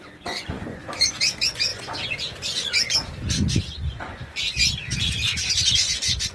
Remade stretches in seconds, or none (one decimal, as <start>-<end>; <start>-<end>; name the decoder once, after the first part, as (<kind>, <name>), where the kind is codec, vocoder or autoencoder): 0.0-6.3 (vocoder, Vocos)